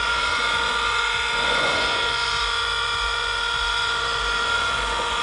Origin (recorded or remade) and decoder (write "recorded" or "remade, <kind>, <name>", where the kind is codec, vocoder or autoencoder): remade, vocoder, Vocos